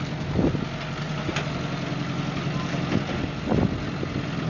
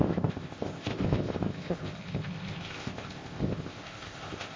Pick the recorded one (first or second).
first